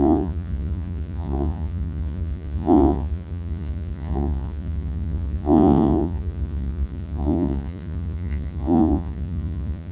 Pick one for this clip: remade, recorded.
remade